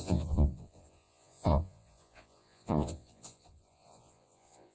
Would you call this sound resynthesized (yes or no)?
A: yes